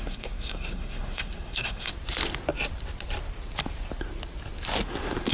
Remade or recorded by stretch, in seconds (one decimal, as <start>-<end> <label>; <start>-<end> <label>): 0.0-1.9 remade; 1.9-5.3 recorded